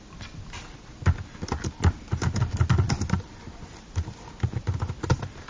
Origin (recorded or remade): recorded